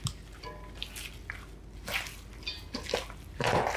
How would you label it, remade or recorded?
recorded